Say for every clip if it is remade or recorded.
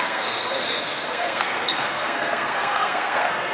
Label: remade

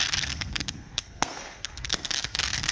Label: remade